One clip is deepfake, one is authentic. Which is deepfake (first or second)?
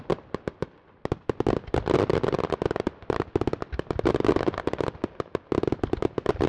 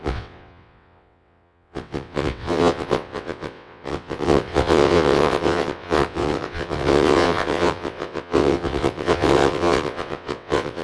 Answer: second